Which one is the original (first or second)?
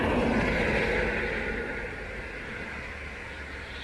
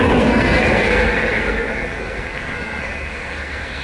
first